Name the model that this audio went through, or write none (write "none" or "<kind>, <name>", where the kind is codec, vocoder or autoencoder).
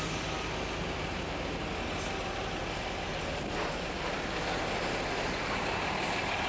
none